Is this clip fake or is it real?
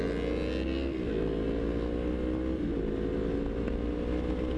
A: real